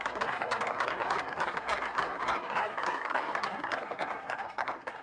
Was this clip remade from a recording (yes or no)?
yes